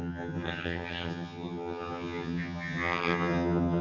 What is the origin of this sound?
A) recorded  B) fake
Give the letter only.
B